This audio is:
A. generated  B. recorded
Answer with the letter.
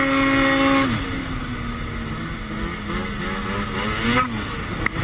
B